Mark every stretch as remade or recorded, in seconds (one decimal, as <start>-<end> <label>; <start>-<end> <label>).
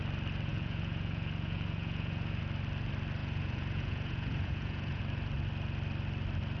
0.0-0.5 recorded; 0.5-2.4 remade; 2.4-3.2 recorded; 3.2-5.0 remade; 5.0-6.6 recorded